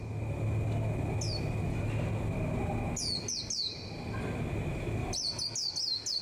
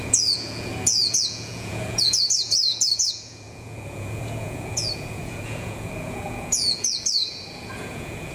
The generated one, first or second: second